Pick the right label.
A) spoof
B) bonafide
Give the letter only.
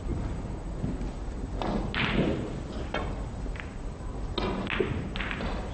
B